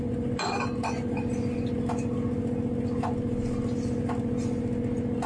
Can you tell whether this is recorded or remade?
recorded